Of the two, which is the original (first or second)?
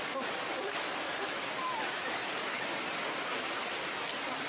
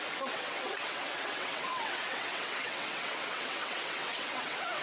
first